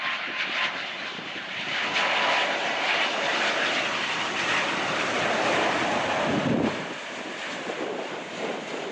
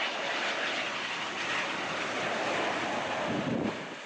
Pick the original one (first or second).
second